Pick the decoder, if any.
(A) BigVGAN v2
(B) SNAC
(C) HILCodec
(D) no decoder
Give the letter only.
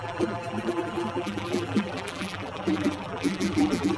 A